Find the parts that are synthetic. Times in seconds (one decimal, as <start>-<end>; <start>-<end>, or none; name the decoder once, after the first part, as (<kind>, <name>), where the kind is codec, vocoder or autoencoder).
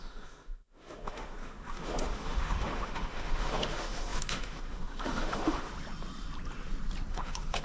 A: 0.0-5.7 (autoencoder, DAC-VAE); 7.1-7.6